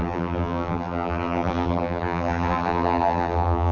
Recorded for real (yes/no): no